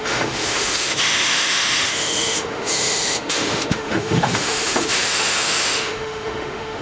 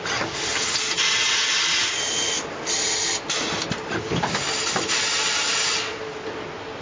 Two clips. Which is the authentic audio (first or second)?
second